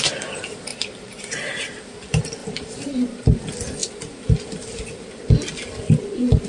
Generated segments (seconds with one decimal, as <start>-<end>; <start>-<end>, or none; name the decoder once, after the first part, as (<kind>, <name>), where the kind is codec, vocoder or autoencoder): 0.7-1.3 (vocoder, BigVGAN v2); 2.4-3.4

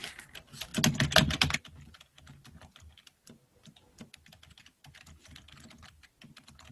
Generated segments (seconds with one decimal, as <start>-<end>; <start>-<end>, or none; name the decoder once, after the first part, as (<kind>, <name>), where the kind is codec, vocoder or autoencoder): none

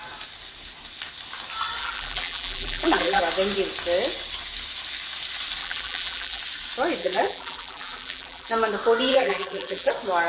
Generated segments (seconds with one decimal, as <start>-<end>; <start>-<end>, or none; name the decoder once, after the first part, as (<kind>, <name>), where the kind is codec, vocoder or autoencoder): 1.8-3.2 (vocoder, BigVGAN v2); 5.6-6.4; 7.0-8.5; 9.1-9.9

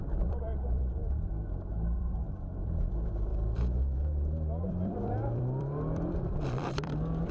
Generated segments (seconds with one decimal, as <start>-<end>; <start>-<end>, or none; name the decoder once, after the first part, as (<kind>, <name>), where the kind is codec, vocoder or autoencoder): 0.0-1.0 (vocoder, BigVGAN v2); 1.7-3.3; 4.7-7.3

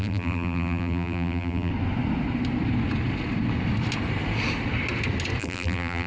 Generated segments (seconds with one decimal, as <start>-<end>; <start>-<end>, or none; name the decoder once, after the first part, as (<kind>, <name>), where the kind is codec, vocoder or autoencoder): 0.0-1.7 (vocoder, BigVGAN v2); 5.4-6.1